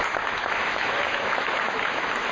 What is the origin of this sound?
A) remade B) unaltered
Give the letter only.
A